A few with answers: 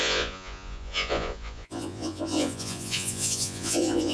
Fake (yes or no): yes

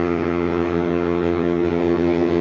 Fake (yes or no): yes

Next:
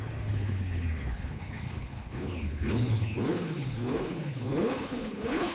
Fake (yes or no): yes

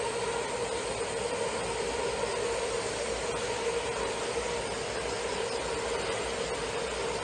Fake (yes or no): no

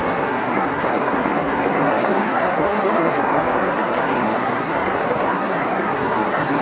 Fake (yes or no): yes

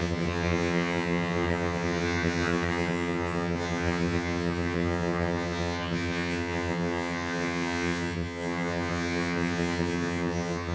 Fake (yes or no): yes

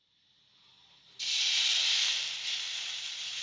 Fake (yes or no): no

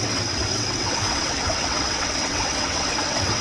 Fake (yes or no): yes